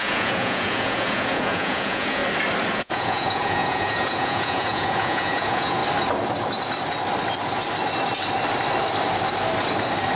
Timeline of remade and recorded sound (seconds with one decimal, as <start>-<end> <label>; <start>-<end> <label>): 0.0-2.2 remade; 2.2-2.7 recorded; 2.7-5.8 remade; 5.8-10.2 recorded